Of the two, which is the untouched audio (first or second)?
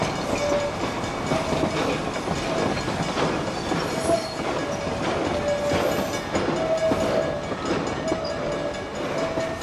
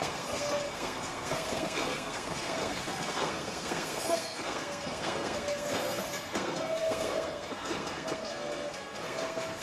first